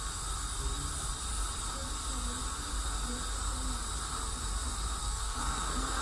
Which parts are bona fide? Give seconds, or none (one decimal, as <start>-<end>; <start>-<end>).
0.0-5.0